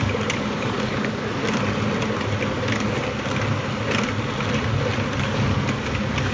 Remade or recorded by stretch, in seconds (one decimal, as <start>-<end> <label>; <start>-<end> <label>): 0.0-1.4 remade; 1.4-5.2 recorded; 5.2-6.3 remade